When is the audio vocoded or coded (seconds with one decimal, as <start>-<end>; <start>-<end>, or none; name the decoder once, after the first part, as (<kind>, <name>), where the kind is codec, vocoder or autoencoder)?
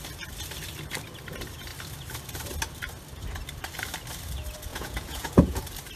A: 4.7-5.6 (vocoder, Vocos)